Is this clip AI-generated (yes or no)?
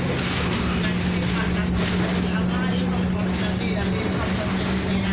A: no